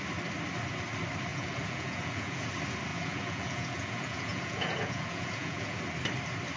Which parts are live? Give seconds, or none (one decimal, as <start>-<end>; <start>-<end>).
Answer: 0.0-1.3; 2.5-2.9; 5.8-6.6